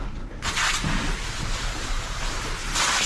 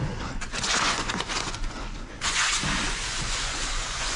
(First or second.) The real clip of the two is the first